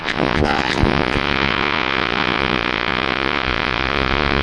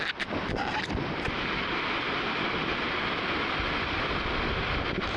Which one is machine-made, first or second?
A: first